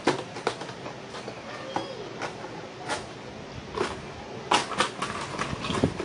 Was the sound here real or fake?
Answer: real